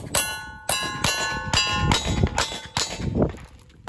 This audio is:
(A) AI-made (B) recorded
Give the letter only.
B